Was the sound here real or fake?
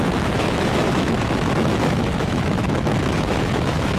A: fake